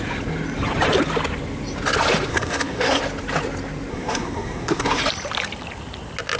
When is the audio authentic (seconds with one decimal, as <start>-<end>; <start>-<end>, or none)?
0.0-2.3; 3.0-3.9; 5.0-6.4